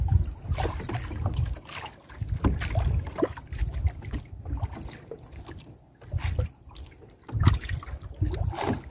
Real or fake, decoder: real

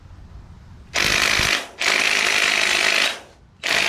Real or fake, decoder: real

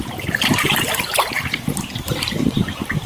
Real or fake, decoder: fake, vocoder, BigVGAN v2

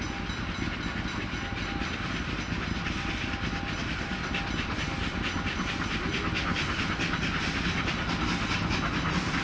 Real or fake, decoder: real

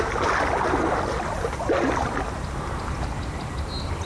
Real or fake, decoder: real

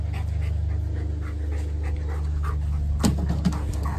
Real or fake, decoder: real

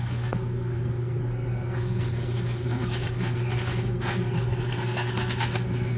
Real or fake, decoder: fake, codec, SNAC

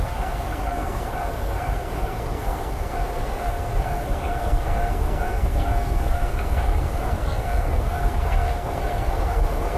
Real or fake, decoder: fake, codec, SNAC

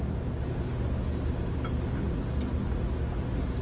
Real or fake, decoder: real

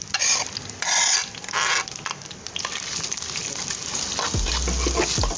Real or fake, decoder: real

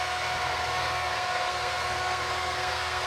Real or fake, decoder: fake, codec, SNAC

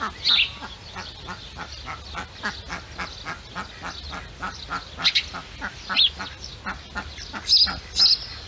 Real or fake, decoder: real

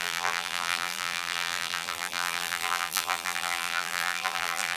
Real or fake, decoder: fake, vocoder, BigVGAN v2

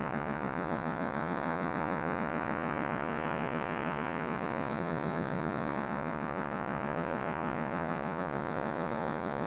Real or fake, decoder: fake, vocoder, Vocos